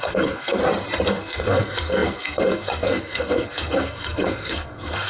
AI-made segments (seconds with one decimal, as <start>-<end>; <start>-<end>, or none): 0.0-0.6; 1.1-5.1